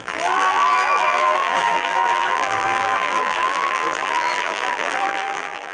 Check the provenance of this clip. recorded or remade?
remade